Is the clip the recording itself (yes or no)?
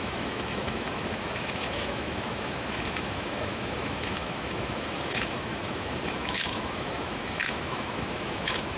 no